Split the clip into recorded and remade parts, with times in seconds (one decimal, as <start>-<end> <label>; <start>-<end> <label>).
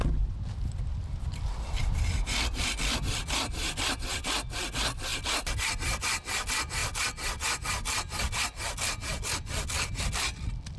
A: 0.0-10.8 recorded